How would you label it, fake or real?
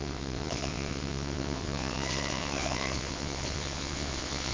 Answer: fake